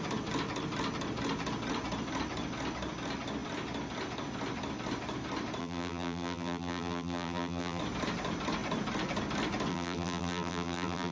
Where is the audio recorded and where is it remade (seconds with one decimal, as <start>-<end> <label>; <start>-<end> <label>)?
0.0-5.6 recorded; 5.6-7.8 remade; 7.8-9.7 recorded; 9.7-11.1 remade